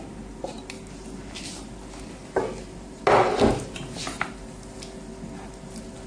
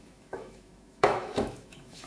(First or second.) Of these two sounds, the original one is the first